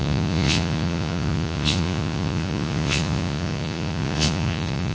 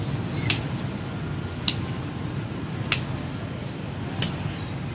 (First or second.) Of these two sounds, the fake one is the first